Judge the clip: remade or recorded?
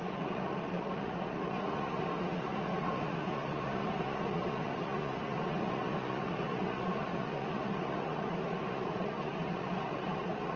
remade